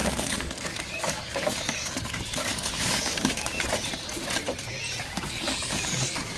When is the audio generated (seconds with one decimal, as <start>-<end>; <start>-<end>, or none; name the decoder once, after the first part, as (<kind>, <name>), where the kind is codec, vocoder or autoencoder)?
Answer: 0.0-3.5 (codec, DAC); 5.0-6.4